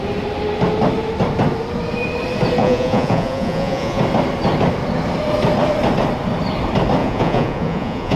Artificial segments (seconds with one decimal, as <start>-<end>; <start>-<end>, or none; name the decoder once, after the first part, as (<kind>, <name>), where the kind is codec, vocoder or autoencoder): 2.6-4.0 (vocoder, Vocos); 7.0-8.2